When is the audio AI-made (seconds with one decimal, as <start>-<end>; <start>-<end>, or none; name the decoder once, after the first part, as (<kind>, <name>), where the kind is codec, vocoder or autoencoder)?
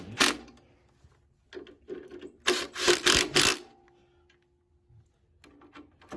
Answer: none